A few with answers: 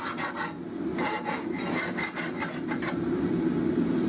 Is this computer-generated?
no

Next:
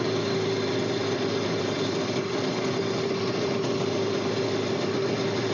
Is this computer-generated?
no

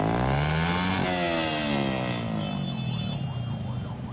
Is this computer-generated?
no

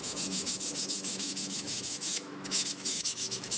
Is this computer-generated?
yes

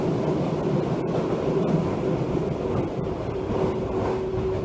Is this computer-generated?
no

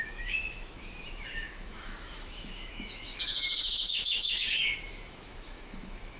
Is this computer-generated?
yes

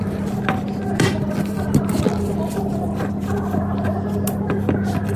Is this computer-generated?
no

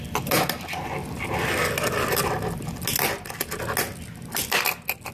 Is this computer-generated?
no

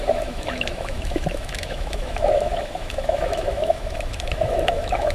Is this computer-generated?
yes